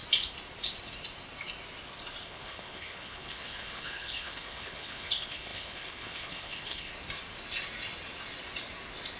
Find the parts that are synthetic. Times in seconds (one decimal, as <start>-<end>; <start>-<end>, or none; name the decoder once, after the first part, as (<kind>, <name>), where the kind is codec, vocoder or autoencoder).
2.2-6.9 (codec, HILCodec)